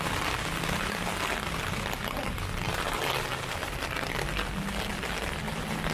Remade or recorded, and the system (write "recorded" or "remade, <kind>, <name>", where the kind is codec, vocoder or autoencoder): recorded